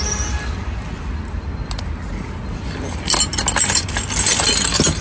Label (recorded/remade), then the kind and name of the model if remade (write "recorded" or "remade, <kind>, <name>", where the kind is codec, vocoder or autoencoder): recorded